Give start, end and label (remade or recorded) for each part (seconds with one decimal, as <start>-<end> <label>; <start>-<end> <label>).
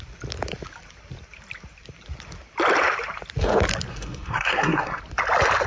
0.0-3.9 recorded; 3.9-5.0 remade; 5.0-5.7 recorded